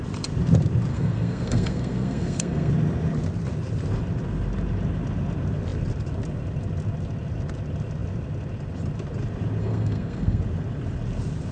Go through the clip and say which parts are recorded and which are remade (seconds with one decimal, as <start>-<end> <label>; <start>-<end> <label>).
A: 0.0-0.9 recorded; 0.9-2.7 remade; 2.7-9.6 recorded; 9.6-10.4 remade; 10.4-11.5 recorded